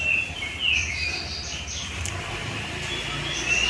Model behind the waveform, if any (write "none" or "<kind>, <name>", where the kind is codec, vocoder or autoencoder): none